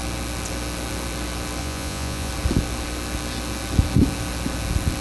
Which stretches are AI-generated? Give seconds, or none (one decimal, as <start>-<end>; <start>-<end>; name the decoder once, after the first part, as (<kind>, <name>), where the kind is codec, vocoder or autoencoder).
1.6-2.3 (vocoder, Vocos)